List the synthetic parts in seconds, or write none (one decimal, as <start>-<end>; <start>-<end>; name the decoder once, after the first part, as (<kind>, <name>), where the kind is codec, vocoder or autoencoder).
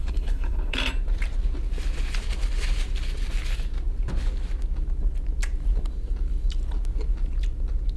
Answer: 0.0-0.8 (codec, HILCodec)